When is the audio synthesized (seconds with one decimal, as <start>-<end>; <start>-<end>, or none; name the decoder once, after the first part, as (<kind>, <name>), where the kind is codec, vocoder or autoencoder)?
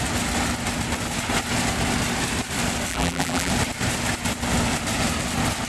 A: 2.9-3.5 (vocoder, BigVGAN v2)